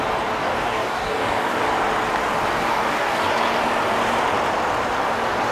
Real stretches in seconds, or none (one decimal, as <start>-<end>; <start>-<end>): 0.0-0.4; 1.7-2.5; 3.3-5.5